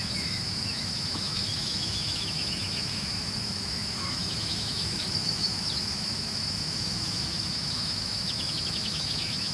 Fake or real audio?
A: fake